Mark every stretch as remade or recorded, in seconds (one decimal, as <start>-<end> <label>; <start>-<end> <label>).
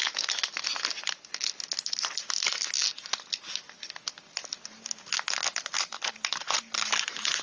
0.0-7.4 recorded